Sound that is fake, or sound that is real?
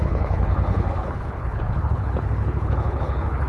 fake